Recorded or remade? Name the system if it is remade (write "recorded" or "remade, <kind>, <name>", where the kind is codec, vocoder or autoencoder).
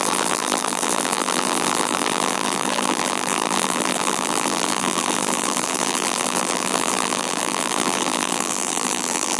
remade, vocoder, BigVGAN v2